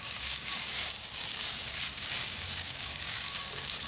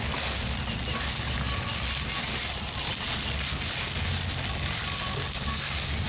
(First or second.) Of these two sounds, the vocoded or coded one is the first